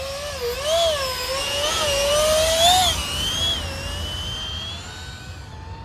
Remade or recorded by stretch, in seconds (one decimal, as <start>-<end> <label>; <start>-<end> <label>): 0.0-1.4 recorded; 1.4-2.1 remade; 2.1-5.8 recorded